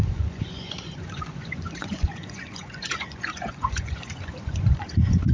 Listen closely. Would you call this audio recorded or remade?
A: remade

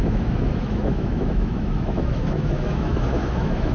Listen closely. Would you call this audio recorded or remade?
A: remade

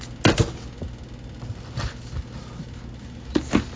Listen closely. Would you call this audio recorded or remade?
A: recorded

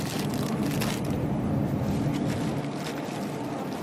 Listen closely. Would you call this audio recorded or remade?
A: recorded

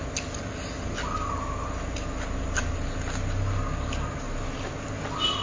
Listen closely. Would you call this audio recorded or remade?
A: recorded